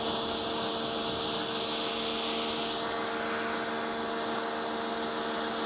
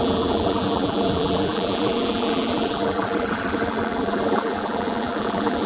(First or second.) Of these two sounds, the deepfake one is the second